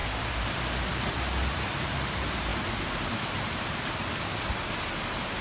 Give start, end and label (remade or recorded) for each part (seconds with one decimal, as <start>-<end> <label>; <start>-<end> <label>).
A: 0.0-5.4 recorded